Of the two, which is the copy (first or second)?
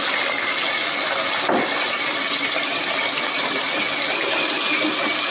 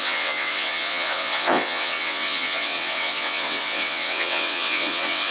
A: second